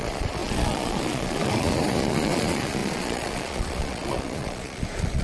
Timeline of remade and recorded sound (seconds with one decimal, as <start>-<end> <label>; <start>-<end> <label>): 0.0-5.2 remade